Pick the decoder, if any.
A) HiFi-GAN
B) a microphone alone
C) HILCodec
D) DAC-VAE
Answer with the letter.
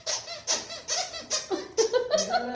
B